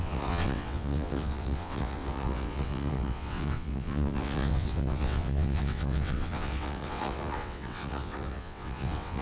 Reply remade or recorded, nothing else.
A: remade